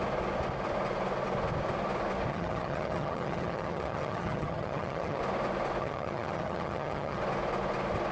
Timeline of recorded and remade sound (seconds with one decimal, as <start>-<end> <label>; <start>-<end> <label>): 0.0-2.3 recorded; 2.3-5.2 remade; 5.2-5.8 recorded; 5.8-7.2 remade; 7.2-8.1 recorded